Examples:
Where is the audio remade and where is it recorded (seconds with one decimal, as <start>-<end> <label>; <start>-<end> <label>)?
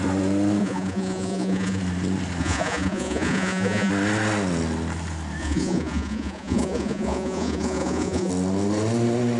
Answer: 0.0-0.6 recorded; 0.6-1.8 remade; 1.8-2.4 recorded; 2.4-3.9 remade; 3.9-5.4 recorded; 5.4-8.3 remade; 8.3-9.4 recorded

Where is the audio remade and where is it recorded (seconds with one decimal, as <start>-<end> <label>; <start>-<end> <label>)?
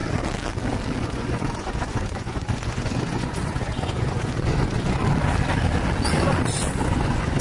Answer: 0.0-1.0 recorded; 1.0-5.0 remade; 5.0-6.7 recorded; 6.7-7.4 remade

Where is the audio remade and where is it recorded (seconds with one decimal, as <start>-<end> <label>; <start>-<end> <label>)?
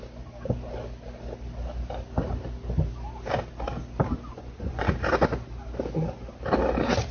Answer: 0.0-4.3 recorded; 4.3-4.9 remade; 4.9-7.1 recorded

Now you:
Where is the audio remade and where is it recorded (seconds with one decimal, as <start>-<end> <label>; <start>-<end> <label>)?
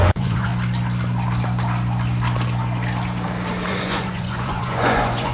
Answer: 0.0-0.5 remade; 0.5-3.7 recorded; 3.7-5.3 remade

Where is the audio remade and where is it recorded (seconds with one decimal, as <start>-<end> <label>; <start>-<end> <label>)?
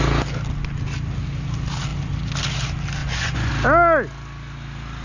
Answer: 0.0-3.0 recorded; 3.0-3.5 remade; 3.5-5.0 recorded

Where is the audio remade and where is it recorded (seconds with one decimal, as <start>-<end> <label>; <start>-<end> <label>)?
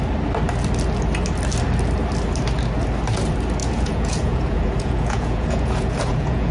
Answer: 0.0-3.6 recorded; 3.6-6.5 remade